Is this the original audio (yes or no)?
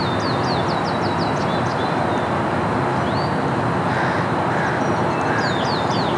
yes